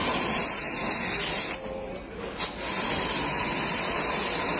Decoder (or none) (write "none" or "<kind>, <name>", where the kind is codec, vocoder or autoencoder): none